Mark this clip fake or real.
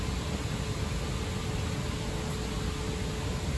real